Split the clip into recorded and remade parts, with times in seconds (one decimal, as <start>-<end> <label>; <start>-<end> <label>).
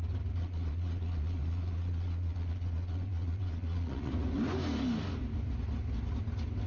0.0-0.4 recorded; 0.4-4.1 remade; 4.1-6.7 recorded